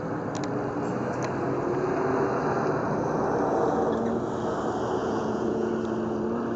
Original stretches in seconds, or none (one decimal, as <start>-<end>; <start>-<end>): 0.0-5.0; 5.7-6.6